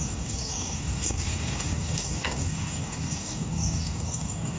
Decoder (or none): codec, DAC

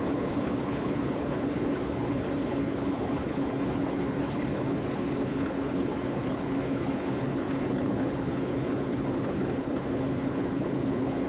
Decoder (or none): codec, HILCodec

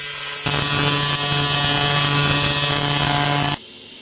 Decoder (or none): none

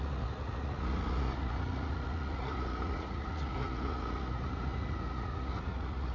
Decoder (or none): vocoder, Vocos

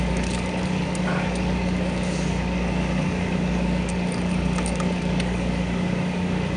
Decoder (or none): codec, DAC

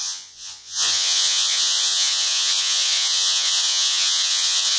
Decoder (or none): vocoder, Vocos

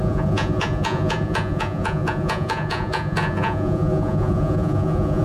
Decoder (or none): vocoder, Vocos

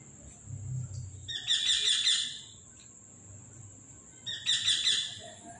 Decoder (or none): none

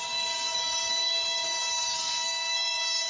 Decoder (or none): codec, DAC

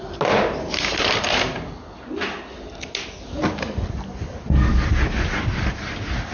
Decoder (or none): none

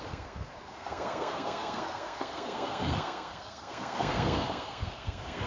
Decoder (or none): codec, SNAC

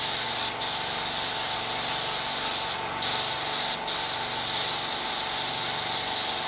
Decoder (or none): none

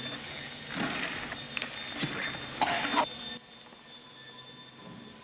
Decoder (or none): none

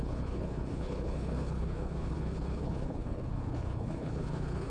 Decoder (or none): codec, HILCodec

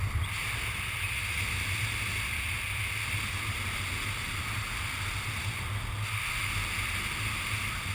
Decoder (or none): none